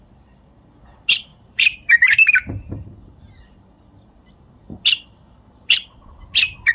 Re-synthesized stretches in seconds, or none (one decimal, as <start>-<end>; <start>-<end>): 1.3-2.3

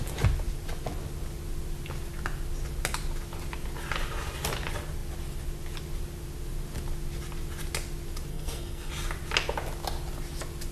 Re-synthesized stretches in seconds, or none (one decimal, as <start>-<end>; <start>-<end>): 8.3-8.9